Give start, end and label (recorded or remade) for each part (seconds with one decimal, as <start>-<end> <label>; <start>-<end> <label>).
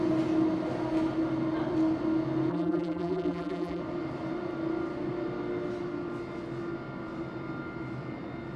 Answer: 0.0-2.5 recorded; 2.5-3.8 remade; 3.8-8.6 recorded